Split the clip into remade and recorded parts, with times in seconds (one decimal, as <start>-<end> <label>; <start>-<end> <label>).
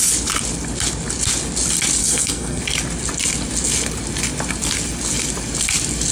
0.0-2.0 recorded; 2.0-2.6 remade; 2.6-6.1 recorded